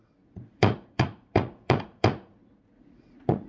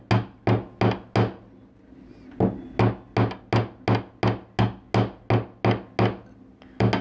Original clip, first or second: second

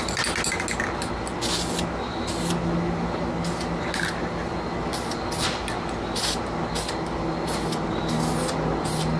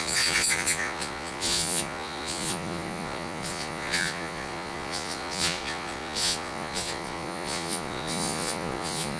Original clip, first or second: first